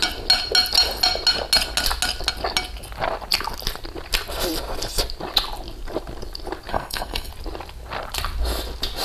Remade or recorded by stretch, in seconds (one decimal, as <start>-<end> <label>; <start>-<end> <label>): 0.0-6.7 recorded; 6.7-7.3 remade; 7.3-9.0 recorded